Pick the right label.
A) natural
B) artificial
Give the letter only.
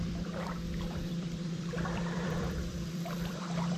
B